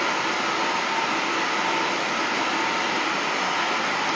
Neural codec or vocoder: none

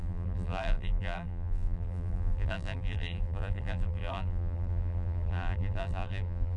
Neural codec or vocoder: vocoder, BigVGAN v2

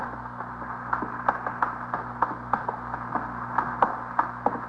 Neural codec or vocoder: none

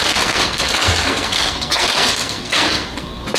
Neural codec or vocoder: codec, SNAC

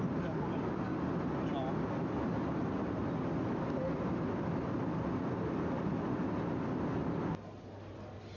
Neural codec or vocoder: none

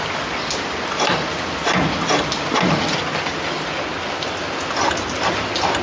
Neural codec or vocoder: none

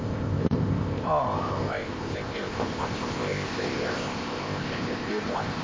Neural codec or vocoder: codec, ZipCodec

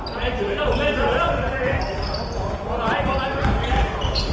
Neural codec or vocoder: none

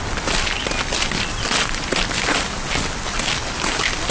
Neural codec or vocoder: none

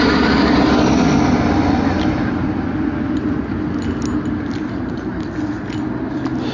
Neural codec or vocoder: none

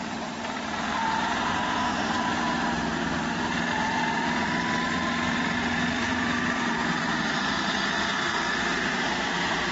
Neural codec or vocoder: vocoder, BigVGAN v2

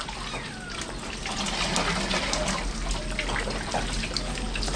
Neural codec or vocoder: none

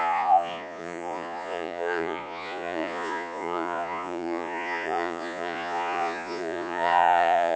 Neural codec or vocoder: vocoder, Vocos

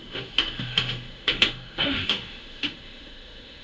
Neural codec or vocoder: autoencoder, DAC-VAE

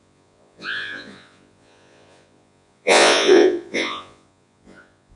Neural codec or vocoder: vocoder, Vocos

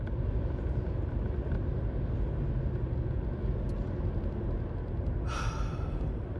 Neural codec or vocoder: none